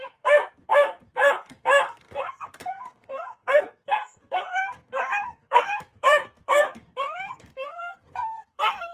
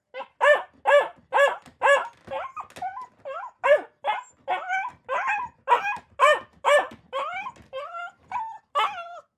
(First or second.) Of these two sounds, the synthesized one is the first